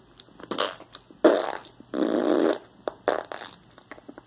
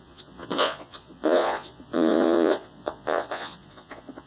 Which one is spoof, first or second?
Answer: second